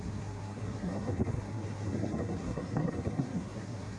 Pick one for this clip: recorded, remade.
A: remade